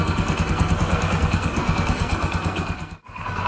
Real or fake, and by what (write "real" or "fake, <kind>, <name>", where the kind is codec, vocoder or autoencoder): fake, codec, SNAC